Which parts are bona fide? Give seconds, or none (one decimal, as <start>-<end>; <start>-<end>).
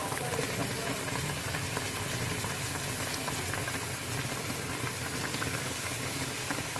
0.0-5.3